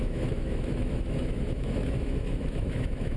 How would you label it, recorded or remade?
remade